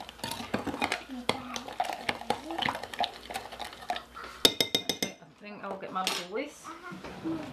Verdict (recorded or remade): recorded